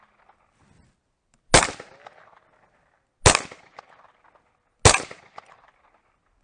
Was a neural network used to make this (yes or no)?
no